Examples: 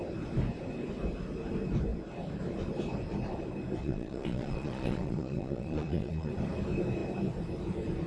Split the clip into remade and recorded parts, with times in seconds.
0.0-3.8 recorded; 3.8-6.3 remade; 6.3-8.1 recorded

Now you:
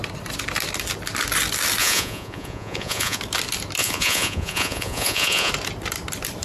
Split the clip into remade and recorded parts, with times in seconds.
0.0-1.8 recorded; 1.8-3.2 remade; 3.2-3.8 recorded; 3.8-5.5 remade; 5.5-6.4 recorded

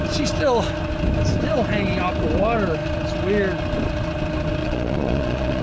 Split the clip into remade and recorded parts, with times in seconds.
0.0-4.6 recorded; 4.6-5.6 remade

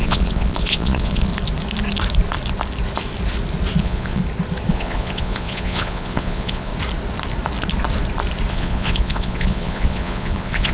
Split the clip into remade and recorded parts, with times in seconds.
0.0-1.3 remade; 1.3-3.8 recorded; 3.8-4.2 remade; 4.2-4.7 recorded; 4.7-6.7 remade; 6.7-8.5 recorded; 8.5-10.7 remade

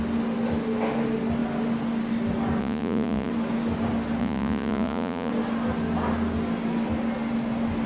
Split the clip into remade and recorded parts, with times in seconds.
0.0-2.6 recorded; 2.6-3.3 remade; 3.3-4.2 recorded; 4.2-5.3 remade; 5.3-7.9 recorded

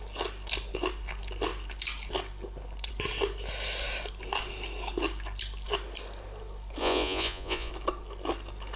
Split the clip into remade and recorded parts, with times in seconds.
0.0-6.8 recorded; 6.8-7.7 remade; 7.7-8.8 recorded

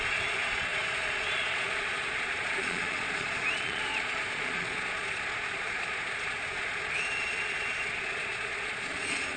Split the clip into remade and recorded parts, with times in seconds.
0.0-9.4 remade

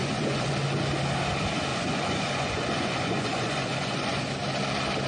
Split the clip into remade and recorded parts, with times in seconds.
0.0-0.5 remade; 0.5-1.7 recorded; 1.7-4.3 remade; 4.3-5.1 recorded